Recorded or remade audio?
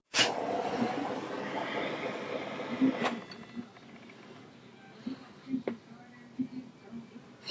recorded